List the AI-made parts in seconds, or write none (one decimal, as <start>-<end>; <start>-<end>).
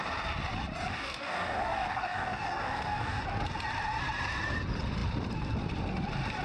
0.9-3.2